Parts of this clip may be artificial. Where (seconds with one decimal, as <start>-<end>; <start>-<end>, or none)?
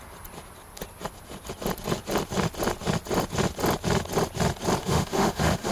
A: 4.8-5.7